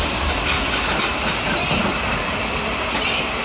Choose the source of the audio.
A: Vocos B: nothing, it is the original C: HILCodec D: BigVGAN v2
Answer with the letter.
B